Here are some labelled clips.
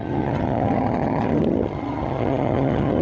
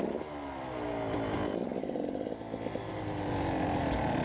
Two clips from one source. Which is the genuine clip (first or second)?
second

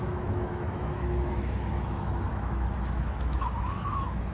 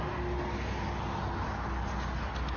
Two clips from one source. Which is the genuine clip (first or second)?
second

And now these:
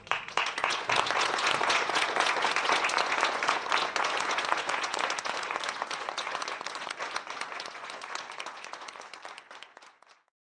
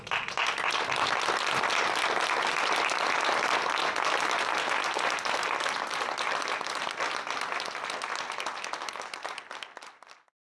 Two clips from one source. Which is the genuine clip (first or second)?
second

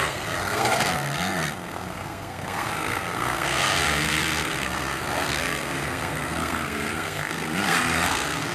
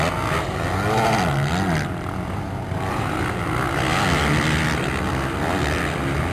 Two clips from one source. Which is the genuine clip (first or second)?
second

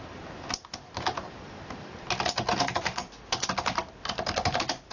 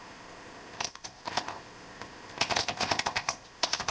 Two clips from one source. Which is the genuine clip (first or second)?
first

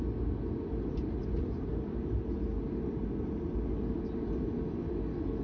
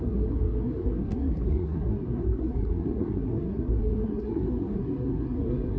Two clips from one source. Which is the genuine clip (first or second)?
first